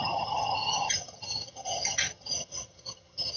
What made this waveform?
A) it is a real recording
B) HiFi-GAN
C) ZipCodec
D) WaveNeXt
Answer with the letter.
B